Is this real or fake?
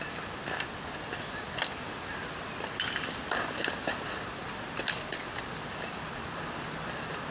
real